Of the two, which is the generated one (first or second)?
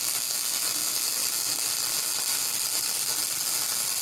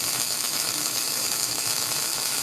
second